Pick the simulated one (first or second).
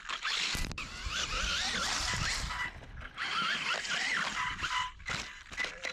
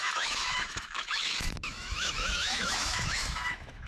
second